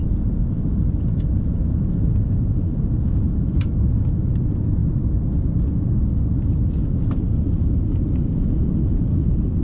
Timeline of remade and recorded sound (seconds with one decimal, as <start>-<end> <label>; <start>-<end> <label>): 0.0-1.4 recorded; 1.4-4.8 remade; 4.8-6.4 recorded; 6.4-9.6 remade